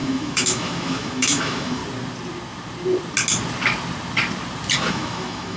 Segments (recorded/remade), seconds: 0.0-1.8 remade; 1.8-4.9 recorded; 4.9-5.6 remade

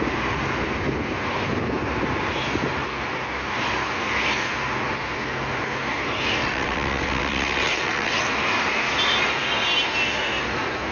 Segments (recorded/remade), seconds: 0.0-6.4 recorded; 6.4-8.2 remade; 8.2-10.9 recorded